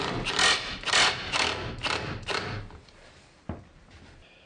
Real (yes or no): yes